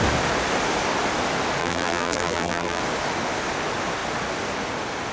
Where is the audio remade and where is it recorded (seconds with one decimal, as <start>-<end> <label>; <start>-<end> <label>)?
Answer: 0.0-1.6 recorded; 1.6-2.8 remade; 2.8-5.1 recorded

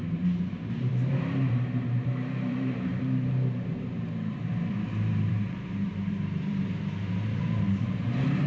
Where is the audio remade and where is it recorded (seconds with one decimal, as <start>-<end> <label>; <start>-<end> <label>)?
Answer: 0.0-0.9 remade; 0.9-1.5 recorded; 1.5-2.9 remade; 2.9-4.1 recorded; 4.1-8.5 remade

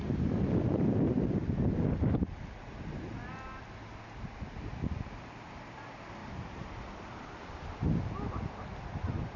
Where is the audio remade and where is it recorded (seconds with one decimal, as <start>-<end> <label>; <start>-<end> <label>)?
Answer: 0.0-6.2 recorded; 6.2-7.2 remade; 7.2-9.4 recorded

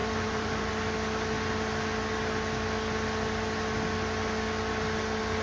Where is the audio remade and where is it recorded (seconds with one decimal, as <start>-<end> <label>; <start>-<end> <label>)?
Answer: 0.0-0.7 remade; 0.7-5.4 recorded

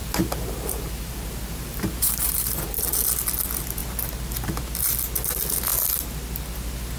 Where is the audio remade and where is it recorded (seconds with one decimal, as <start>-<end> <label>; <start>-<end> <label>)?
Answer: 0.0-2.8 remade; 2.8-7.0 recorded

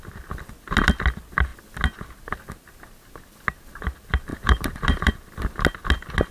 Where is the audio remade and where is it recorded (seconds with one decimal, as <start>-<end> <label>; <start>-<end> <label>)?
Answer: 0.0-4.3 recorded; 4.3-5.1 remade; 5.1-6.3 recorded

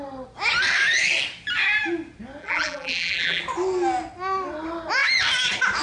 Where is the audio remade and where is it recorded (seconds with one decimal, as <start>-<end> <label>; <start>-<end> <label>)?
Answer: 0.0-2.4 recorded; 2.4-3.4 remade; 3.4-5.8 recorded

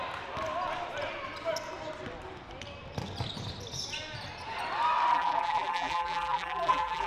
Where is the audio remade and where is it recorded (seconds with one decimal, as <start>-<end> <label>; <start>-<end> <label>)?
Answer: 0.0-5.1 recorded; 5.1-7.1 remade